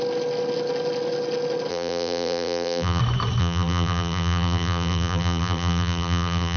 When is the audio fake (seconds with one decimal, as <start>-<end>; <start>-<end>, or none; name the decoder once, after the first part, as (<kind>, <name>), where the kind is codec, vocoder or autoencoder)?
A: 1.7-3.0 (vocoder, BigVGAN v2); 3.4-6.6

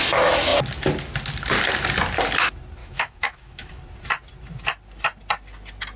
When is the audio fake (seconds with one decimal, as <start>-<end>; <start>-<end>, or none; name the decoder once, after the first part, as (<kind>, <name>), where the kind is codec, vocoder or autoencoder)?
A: 2.8-3.7 (autoencoder, DAC-VAE)

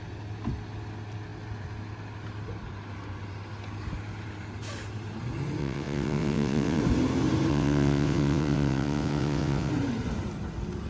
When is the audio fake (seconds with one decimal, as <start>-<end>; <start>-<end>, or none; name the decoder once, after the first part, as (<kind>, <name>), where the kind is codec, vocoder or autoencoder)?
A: 5.6-6.8 (vocoder, WaveNeXt); 7.5-9.7

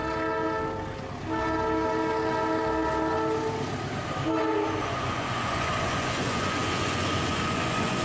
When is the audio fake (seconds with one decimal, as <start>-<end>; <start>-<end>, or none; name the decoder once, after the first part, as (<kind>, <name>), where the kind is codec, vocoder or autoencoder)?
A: 4.8-8.0 (vocoder, Vocos)